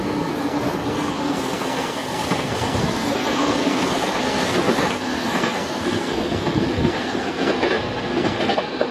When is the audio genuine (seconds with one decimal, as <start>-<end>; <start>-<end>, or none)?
none